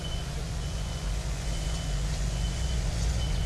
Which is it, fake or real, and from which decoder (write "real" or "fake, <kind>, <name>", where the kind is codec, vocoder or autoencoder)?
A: fake, vocoder, Vocos